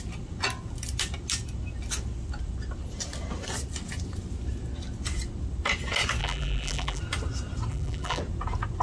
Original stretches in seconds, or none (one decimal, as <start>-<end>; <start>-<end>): 0.0-6.2; 7.0-7.7; 8.2-8.8